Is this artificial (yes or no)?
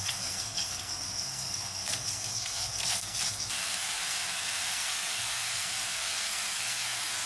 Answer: yes